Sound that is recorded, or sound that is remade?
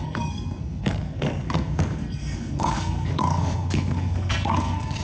remade